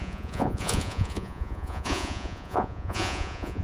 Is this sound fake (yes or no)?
yes